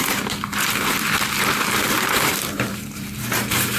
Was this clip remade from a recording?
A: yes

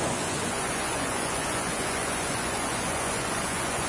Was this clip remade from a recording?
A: yes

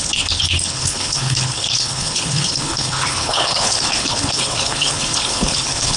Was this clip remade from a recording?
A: yes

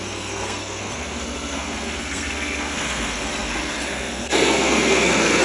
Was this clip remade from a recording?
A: yes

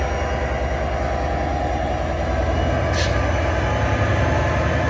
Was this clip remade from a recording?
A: no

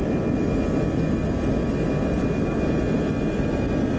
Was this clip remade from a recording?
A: no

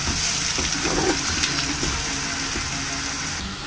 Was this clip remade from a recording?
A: no